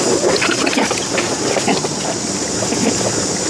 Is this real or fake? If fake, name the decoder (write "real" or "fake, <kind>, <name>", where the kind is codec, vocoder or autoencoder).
real